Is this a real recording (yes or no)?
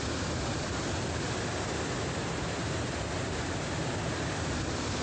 yes